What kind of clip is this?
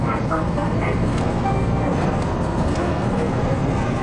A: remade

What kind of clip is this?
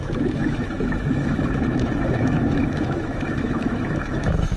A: remade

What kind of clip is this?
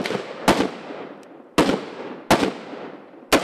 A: recorded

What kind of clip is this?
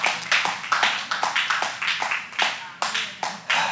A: recorded